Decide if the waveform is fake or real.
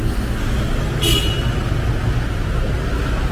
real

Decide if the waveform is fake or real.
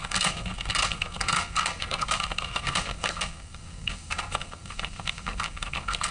fake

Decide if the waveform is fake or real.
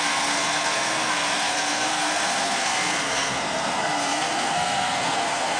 fake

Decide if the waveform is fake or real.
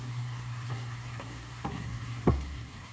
fake